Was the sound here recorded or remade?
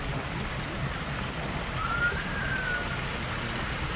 recorded